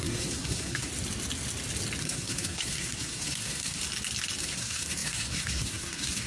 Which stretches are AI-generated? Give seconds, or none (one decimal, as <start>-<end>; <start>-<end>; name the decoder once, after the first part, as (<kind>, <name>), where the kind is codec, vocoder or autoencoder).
0.0-0.9 (codec, SNAC); 2.0-3.8; 4.4-6.3